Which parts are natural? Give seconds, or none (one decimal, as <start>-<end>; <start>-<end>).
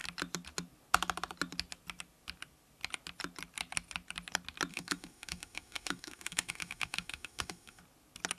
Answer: 0.0-4.7; 7.8-8.4